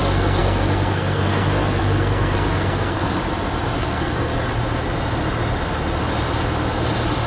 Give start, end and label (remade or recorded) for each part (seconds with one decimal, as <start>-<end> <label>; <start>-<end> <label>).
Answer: 0.0-3.2 remade; 3.2-3.8 recorded; 3.8-4.3 remade; 4.3-7.3 recorded